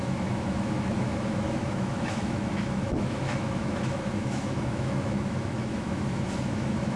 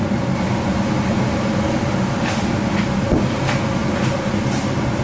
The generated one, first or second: first